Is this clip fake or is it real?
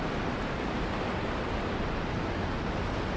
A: real